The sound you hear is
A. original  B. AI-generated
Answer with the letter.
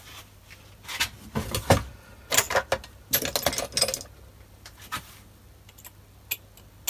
A